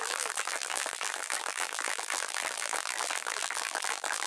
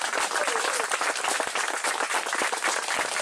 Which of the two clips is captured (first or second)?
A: second